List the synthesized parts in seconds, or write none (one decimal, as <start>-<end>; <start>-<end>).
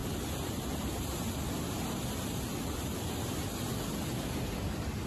none